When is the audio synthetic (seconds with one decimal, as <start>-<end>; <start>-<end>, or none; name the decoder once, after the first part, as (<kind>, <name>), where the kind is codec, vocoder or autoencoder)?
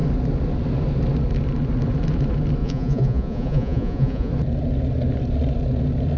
2.6-4.3 (vocoder, Vocos)